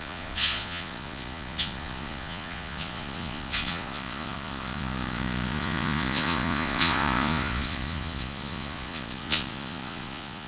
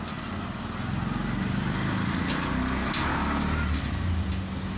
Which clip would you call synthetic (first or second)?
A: first